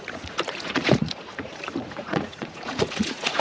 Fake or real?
fake